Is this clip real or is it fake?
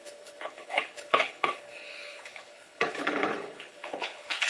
fake